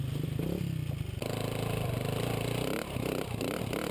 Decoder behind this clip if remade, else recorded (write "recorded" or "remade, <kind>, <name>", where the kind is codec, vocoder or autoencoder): recorded